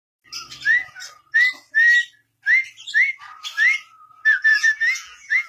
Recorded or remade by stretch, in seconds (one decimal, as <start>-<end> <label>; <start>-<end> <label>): 0.0-4.5 recorded; 4.5-5.5 remade